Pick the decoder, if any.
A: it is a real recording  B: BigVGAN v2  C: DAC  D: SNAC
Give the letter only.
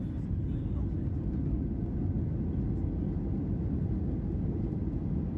A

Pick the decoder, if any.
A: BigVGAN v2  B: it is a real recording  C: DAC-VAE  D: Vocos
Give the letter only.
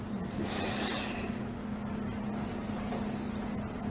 B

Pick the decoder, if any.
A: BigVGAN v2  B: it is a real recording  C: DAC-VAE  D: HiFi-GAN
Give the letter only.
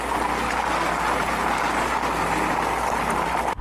B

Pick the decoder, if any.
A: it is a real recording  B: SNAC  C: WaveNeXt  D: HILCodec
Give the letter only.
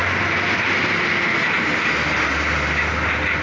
A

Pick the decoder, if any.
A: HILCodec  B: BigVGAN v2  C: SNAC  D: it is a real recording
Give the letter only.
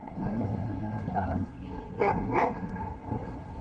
C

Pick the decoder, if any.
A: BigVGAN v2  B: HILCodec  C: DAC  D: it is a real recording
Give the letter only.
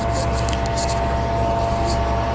D